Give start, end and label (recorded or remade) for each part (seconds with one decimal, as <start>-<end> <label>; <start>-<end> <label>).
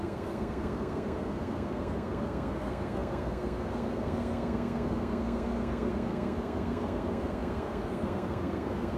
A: 0.0-9.0 remade